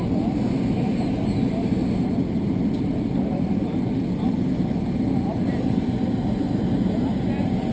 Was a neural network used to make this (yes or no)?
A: no